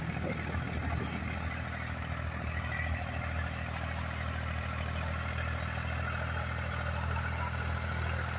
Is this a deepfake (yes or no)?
no